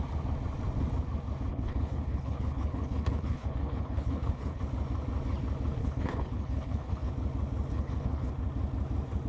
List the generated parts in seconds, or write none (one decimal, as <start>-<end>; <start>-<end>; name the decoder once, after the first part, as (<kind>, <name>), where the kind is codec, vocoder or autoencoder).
1.5-4.6 (codec, HILCodec); 5.8-7.1; 7.7-8.3